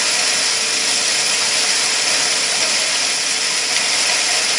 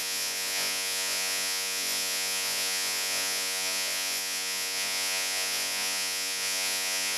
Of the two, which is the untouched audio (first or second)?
first